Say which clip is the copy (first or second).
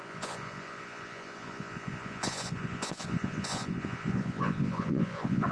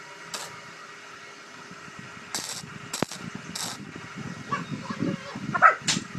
first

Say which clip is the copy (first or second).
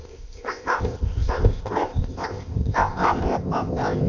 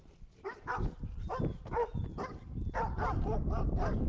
first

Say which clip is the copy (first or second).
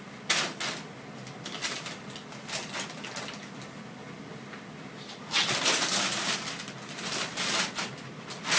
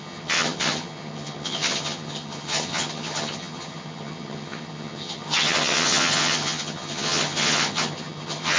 second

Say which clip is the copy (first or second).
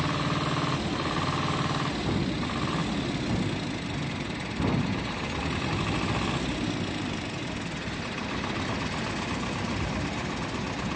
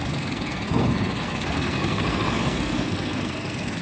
second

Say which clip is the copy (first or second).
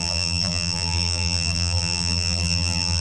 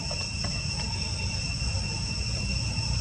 first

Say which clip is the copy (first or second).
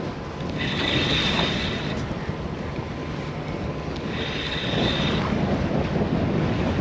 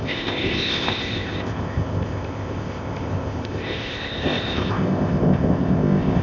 second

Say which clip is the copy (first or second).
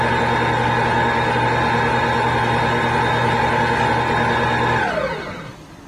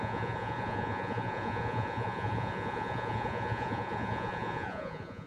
second